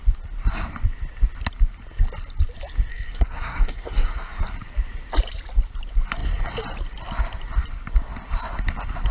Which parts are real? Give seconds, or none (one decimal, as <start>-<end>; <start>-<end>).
0.0-2.9; 4.4-9.1